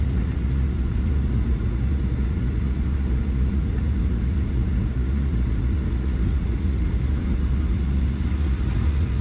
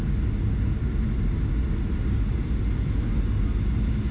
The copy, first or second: first